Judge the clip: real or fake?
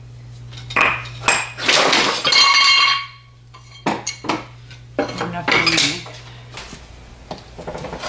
real